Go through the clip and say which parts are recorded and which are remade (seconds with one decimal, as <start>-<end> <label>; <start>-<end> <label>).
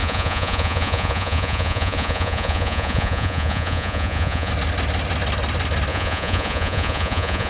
0.0-4.5 remade; 4.5-5.9 recorded; 5.9-7.5 remade